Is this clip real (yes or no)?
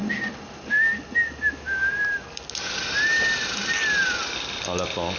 yes